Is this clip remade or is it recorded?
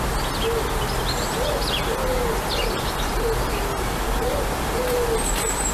recorded